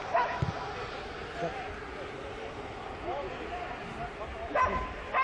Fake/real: real